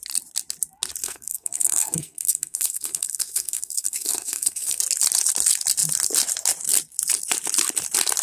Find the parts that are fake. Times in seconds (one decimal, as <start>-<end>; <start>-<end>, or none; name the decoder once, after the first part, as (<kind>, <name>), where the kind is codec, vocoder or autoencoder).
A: 1.0-4.8 (codec, SNAC)